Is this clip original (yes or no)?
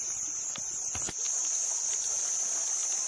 yes